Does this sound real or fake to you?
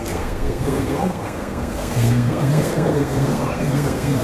fake